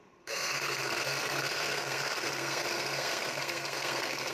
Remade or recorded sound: remade